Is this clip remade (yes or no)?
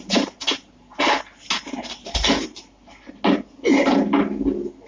no